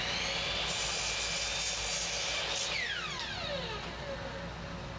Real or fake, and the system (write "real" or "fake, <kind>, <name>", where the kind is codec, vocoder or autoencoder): real